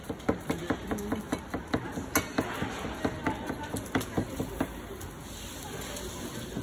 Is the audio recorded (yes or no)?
yes